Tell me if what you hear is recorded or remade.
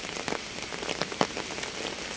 recorded